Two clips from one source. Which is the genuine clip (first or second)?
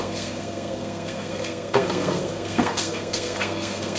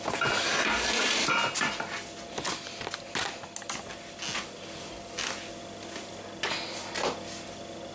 second